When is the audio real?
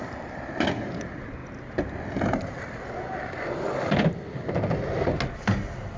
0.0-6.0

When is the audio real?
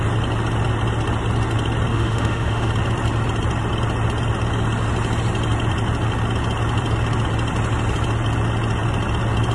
0.0-1.9; 2.7-9.5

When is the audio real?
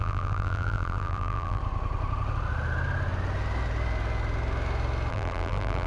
1.6-5.1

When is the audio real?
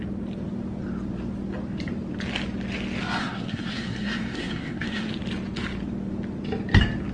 0.0-3.2; 5.1-7.1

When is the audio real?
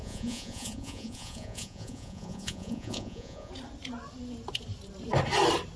3.5-5.8